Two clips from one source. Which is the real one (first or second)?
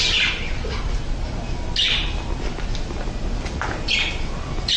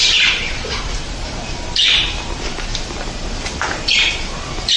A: first